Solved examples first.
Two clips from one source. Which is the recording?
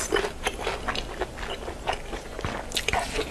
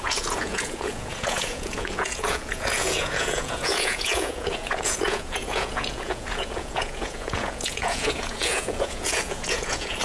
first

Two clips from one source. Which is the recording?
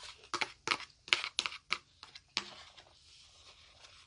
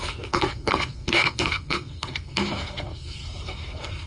first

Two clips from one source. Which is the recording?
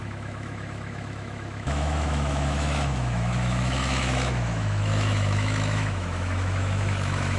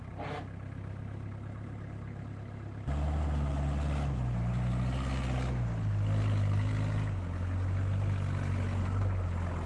second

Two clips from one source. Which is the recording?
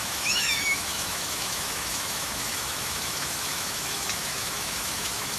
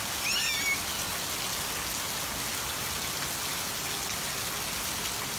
second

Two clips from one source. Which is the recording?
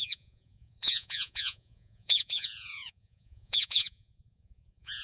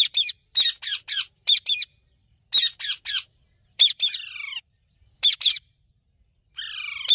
second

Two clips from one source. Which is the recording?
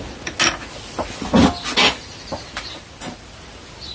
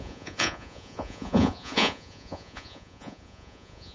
first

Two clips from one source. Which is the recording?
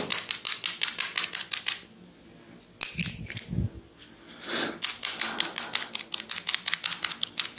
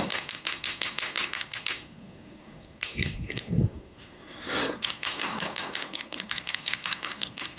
first